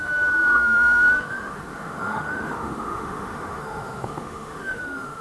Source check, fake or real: fake